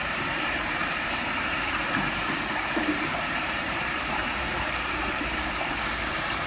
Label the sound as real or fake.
fake